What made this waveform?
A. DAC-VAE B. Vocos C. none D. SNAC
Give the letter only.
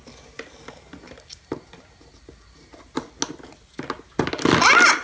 C